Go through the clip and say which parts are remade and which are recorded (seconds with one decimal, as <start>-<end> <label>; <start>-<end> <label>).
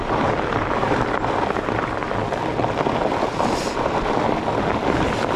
0.0-2.0 remade; 2.0-2.6 recorded; 2.6-5.4 remade